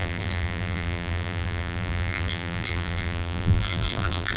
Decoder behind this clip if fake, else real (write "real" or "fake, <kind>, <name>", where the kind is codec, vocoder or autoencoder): fake, vocoder, BigVGAN v2